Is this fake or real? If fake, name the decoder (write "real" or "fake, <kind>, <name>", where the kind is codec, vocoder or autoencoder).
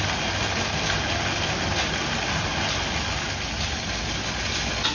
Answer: real